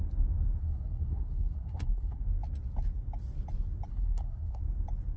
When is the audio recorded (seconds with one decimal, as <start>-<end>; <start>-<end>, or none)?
0.0-0.6; 2.2-3.9; 4.6-5.2